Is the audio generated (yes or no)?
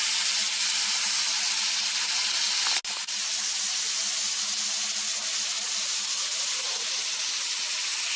no